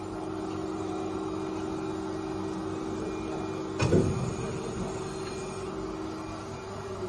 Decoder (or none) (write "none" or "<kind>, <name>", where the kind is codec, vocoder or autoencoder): none